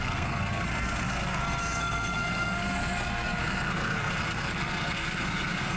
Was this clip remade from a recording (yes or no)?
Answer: yes